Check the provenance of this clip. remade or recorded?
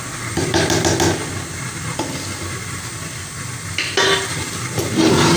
recorded